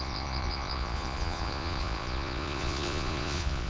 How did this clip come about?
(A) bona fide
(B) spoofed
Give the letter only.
B